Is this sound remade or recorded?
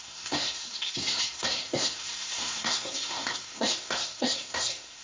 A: remade